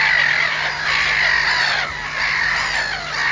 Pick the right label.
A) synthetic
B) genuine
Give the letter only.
B